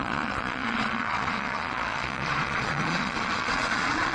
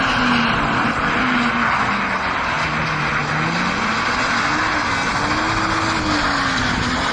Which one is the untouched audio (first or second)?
second